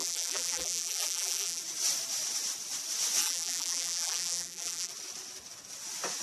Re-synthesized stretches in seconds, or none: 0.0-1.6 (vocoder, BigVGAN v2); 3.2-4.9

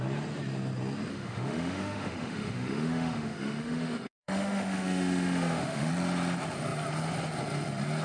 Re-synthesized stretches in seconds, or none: 1.1-5.9 (autoencoder, DAC-VAE)

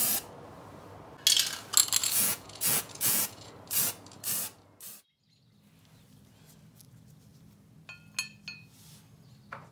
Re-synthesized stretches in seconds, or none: 2.0-3.5 (vocoder, Vocos)

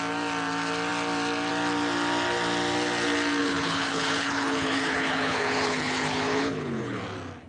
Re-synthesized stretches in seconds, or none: 3.4-7.0 (codec, HILCodec)